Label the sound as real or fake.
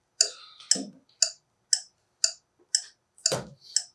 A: real